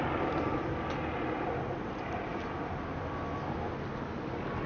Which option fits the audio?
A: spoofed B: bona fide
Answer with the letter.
B